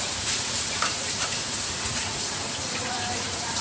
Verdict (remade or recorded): remade